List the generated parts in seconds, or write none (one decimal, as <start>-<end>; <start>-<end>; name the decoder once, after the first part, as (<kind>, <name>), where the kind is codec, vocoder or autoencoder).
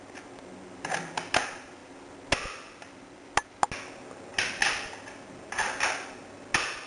none